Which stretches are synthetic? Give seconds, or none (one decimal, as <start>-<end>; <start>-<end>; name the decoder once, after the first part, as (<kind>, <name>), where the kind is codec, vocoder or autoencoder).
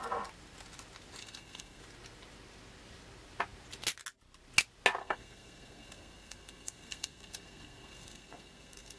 1.2-1.8 (codec, SNAC); 5.0-9.0